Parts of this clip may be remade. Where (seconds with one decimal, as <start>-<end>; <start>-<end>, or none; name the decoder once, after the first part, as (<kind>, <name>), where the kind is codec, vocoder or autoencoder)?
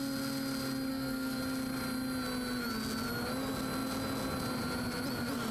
0.9-1.4 (codec, SNAC)